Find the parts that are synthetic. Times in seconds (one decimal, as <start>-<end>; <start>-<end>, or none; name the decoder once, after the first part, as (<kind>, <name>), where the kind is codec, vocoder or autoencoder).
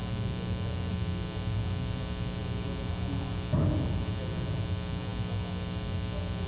none